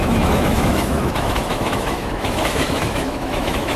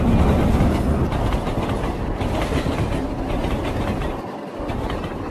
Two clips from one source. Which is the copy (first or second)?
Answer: first